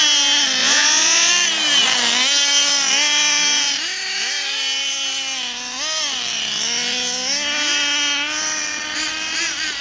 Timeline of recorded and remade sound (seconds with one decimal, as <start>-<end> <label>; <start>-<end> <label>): 0.0-0.6 recorded; 0.6-1.3 remade; 1.3-9.8 recorded